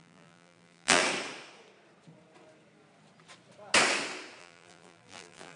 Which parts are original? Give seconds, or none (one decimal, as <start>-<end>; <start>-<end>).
1.0-4.4